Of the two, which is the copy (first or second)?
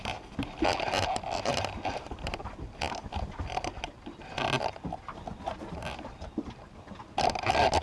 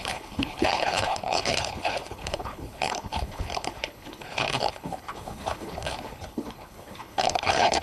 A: second